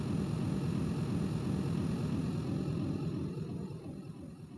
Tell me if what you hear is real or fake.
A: real